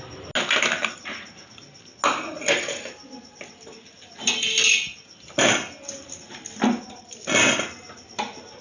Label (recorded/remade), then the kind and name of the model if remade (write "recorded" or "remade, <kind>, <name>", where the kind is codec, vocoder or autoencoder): recorded